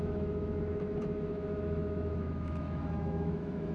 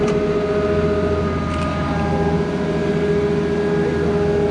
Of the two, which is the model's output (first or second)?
first